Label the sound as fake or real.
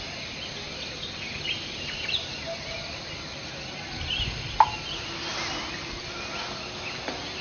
real